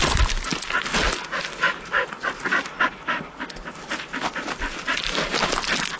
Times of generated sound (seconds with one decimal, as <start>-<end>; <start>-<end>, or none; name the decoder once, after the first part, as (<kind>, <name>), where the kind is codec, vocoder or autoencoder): none